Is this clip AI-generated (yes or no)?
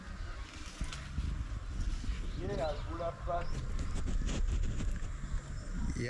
no